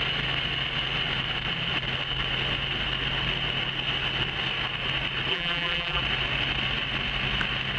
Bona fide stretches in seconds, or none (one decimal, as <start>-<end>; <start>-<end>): 0.0-5.3; 6.0-7.8